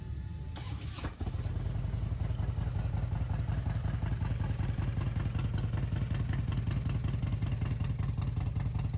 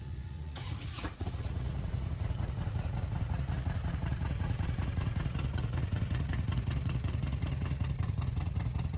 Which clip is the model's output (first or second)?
second